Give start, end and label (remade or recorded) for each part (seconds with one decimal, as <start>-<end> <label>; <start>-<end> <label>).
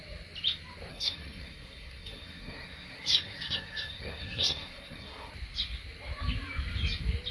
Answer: 0.0-0.9 recorded; 0.9-5.3 remade; 5.3-7.3 recorded